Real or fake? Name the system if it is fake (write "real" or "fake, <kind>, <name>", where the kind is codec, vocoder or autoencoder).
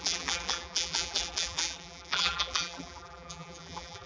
fake, vocoder, BigVGAN v2